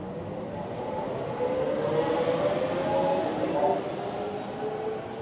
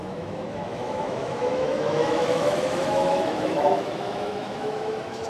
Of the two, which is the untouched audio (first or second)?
first